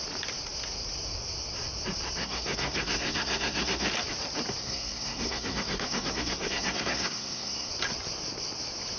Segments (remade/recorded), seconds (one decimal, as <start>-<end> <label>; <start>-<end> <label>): 0.0-2.2 recorded; 2.2-3.9 remade; 3.9-4.6 recorded; 4.6-7.7 remade; 7.7-9.0 recorded